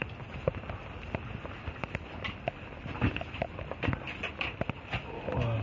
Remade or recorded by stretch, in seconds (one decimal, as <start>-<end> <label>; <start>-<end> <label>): 0.0-5.6 recorded